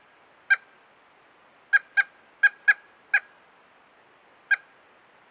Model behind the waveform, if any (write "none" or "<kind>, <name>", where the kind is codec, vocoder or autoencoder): none